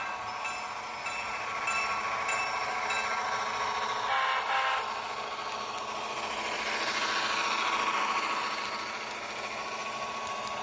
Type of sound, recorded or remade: recorded